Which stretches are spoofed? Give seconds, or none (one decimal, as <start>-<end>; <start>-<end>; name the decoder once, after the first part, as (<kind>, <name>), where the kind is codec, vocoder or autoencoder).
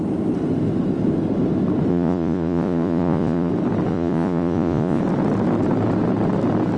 1.9-3.5 (vocoder, Vocos); 3.9-5.0